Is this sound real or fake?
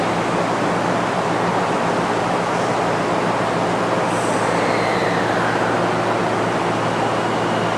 real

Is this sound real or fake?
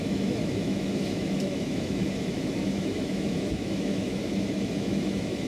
fake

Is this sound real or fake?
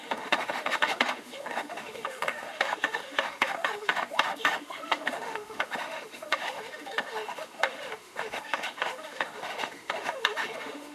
fake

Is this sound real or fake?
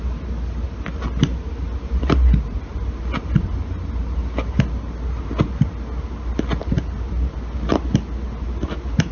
real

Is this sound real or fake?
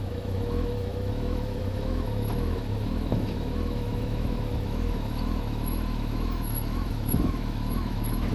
fake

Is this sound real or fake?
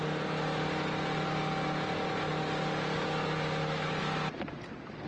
real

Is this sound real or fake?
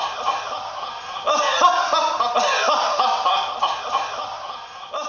real